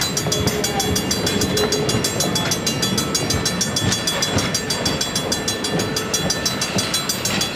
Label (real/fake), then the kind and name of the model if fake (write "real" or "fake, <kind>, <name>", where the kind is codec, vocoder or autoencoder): real